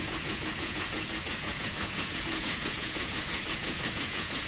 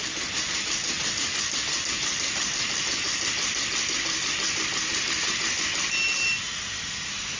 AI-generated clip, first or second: first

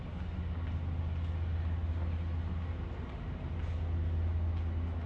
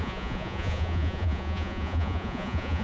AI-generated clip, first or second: second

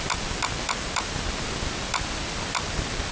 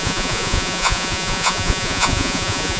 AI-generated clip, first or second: second